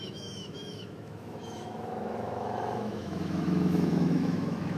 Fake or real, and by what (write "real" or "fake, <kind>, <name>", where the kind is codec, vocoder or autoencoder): fake, autoencoder, DAC-VAE